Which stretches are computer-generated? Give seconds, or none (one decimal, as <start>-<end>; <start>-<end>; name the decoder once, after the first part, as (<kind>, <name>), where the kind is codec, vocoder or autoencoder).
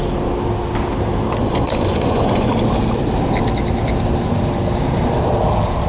1.4-2.5 (vocoder, Vocos)